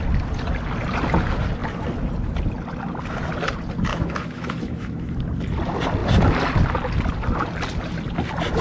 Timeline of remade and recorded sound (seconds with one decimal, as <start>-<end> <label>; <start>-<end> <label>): 0.0-3.9 recorded; 3.9-5.2 remade; 5.2-8.6 recorded

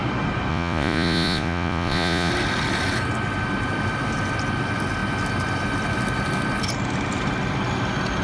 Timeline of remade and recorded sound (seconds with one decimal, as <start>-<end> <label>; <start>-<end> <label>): 0.0-0.5 recorded; 0.5-2.3 remade; 2.3-8.2 recorded

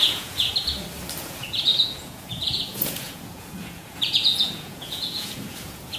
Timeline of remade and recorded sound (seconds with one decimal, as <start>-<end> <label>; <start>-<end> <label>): 0.0-0.5 remade; 0.5-1.2 recorded; 1.2-6.0 remade